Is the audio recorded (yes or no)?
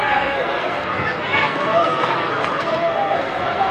no